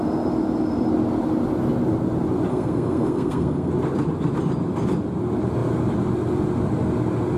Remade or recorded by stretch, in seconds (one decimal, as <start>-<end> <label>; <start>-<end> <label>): 0.0-2.5 recorded; 2.5-3.7 remade; 3.7-7.4 recorded